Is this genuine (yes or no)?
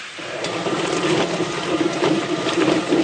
no